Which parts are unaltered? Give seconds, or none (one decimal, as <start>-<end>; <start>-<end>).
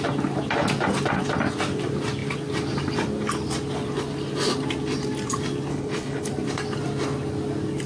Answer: 0.0-5.7; 6.3-7.9